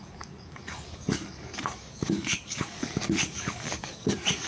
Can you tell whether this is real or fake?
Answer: fake